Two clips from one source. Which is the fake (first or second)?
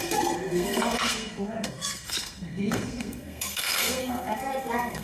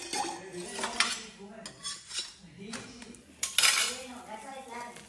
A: first